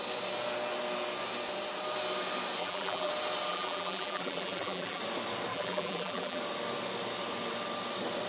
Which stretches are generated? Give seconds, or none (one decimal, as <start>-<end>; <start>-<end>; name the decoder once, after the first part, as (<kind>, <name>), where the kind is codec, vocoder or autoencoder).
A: 2.6-3.1 (vocoder, BigVGAN v2); 3.5-5.0; 5.5-6.4